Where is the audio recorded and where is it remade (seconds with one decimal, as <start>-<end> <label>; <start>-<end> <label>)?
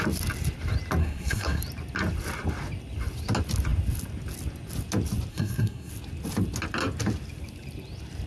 0.0-1.0 recorded; 1.0-1.6 remade; 1.6-5.3 recorded; 5.3-5.9 remade; 5.9-8.3 recorded